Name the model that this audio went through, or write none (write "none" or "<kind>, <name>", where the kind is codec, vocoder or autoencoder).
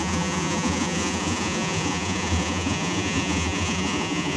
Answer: vocoder, Vocos